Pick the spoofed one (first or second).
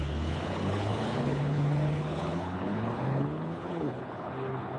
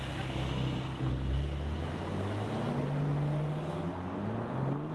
first